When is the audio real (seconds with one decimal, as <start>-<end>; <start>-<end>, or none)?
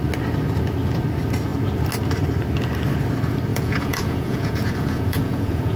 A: 0.0-3.5